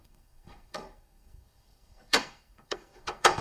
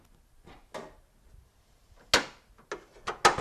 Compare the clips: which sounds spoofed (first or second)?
first